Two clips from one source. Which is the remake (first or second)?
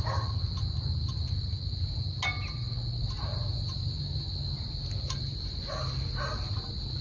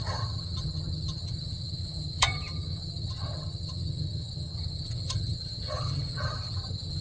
second